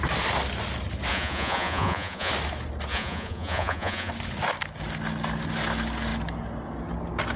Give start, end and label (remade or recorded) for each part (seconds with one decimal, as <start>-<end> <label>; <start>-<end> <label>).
0.0-1.1 recorded; 1.1-2.3 remade; 2.3-2.9 recorded; 2.9-4.1 remade; 4.1-7.4 recorded